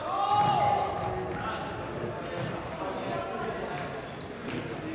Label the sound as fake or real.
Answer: real